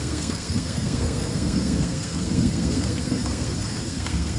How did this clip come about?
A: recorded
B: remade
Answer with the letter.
B